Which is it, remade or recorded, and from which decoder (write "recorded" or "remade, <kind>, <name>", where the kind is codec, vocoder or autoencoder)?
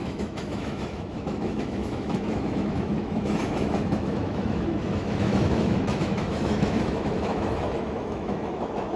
remade, autoencoder, DAC-VAE